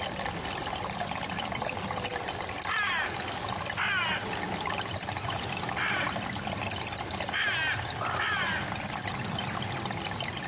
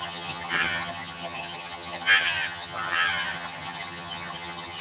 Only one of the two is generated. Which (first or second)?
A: second